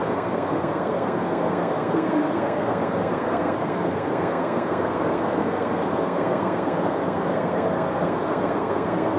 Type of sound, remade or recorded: remade